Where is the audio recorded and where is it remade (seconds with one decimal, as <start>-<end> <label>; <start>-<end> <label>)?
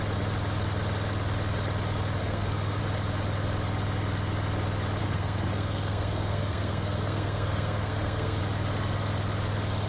0.0-2.2 recorded; 2.2-2.8 remade; 2.8-5.0 recorded; 5.0-8.4 remade; 8.4-9.9 recorded